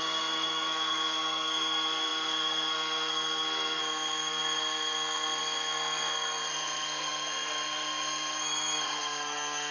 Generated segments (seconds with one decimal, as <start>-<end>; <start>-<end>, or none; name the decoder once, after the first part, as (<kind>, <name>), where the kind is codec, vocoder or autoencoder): 0.0-9.7 (codec, SNAC)